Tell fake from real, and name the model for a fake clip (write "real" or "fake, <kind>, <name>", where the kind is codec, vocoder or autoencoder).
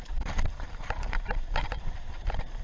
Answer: fake, vocoder, BigVGAN v2